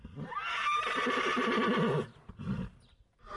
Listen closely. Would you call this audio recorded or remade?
recorded